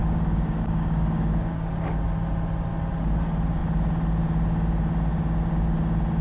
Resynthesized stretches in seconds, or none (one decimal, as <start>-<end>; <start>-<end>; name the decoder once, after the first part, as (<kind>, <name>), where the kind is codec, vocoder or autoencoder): 0.0-1.9 (codec, DAC)